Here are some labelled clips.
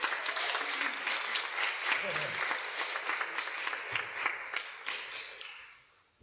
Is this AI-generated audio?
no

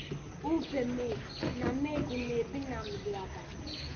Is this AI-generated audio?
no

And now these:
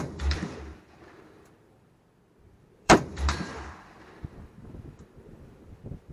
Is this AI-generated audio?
yes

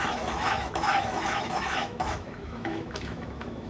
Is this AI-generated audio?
yes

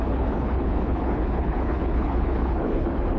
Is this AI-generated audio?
yes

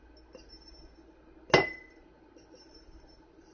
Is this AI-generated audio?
no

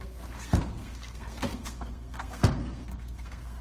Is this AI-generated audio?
yes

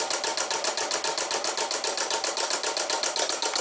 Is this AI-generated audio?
no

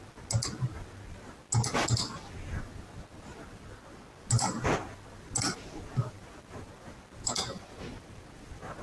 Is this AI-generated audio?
no